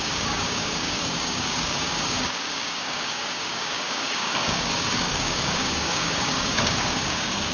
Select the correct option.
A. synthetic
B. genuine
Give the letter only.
A